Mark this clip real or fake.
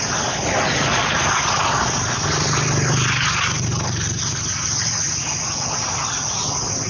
real